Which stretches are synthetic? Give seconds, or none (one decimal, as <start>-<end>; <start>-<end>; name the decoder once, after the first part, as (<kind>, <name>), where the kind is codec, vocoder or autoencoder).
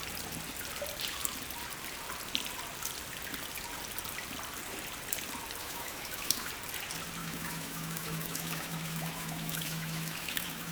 5.6-6.5 (autoencoder, DAC-VAE); 7.2-10.7